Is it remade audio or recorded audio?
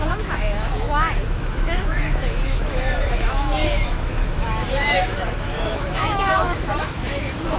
remade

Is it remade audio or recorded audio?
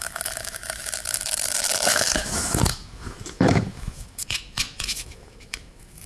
remade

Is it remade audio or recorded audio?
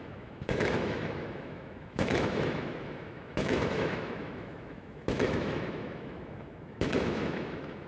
remade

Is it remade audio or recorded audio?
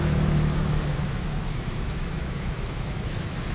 remade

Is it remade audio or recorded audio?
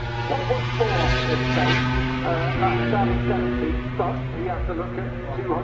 recorded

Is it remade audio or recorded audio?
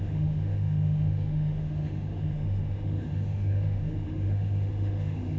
remade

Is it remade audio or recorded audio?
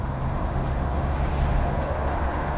remade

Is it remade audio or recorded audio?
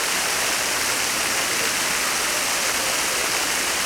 recorded